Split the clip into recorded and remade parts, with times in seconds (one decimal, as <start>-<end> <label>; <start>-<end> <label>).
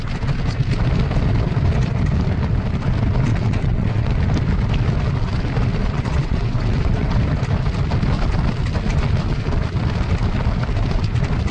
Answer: 0.0-3.3 recorded; 3.3-4.1 remade; 4.1-5.8 recorded; 5.8-7.2 remade; 7.2-11.5 recorded